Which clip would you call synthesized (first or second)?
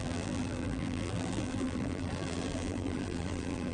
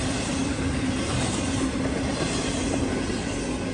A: first